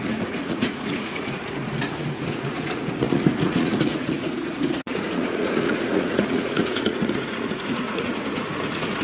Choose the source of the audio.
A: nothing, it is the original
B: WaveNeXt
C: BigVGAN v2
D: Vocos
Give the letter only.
D